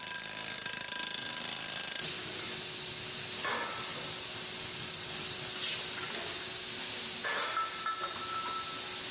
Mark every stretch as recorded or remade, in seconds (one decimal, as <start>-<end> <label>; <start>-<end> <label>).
0.0-9.1 recorded